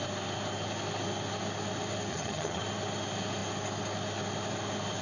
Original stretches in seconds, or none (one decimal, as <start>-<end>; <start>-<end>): 0.0-2.1; 2.6-5.0